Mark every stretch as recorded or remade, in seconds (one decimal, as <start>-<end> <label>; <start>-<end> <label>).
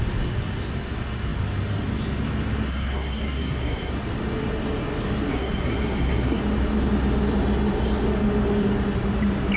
0.0-2.7 recorded; 2.7-3.9 remade; 3.9-5.3 recorded; 5.3-6.4 remade; 6.4-9.6 recorded